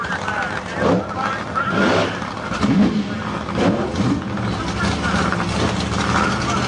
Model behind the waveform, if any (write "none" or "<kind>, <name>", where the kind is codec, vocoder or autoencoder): none